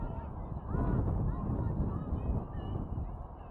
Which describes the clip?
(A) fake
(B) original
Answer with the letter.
B